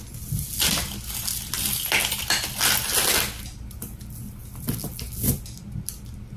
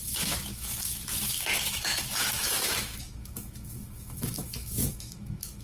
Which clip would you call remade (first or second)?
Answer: second